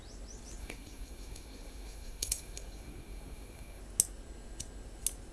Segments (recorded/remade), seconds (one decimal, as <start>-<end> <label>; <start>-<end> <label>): 0.0-0.6 recorded; 0.6-3.8 remade; 3.8-5.3 recorded